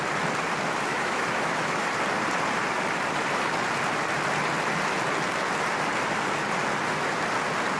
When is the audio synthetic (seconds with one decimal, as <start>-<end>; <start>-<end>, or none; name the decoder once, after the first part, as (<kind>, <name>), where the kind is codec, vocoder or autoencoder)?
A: 0.9-1.9 (autoencoder, DAC-VAE)

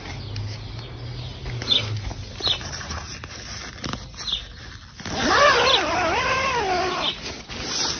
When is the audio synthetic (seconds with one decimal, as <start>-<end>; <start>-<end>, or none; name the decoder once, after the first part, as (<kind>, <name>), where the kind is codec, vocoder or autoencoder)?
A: none

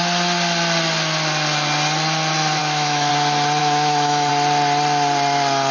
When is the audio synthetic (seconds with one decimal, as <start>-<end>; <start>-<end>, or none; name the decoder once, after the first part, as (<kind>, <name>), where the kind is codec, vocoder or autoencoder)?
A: 2.6-3.1 (autoencoder, DAC-VAE); 3.6-4.3

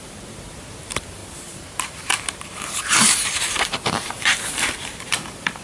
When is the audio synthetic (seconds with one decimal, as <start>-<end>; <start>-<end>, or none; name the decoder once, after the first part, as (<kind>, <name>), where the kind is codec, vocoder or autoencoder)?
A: 0.0-5.6 (vocoder, BigVGAN v2)

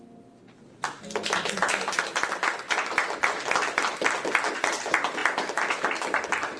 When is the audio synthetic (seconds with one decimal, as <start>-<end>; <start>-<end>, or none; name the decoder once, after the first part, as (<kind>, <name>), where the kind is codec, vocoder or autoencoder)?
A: none

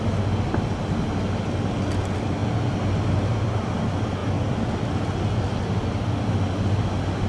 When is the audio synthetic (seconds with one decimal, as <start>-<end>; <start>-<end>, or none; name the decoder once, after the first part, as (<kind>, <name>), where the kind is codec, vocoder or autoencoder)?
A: none

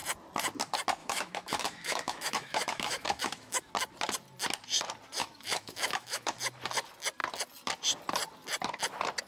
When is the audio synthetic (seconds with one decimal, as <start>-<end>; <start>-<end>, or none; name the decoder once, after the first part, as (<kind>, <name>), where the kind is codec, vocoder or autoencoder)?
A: 1.0-3.7 (autoencoder, DAC-VAE); 5.2-6.4